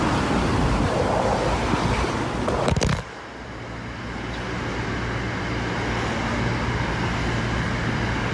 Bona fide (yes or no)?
yes